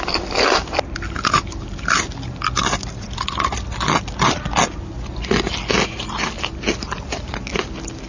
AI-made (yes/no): no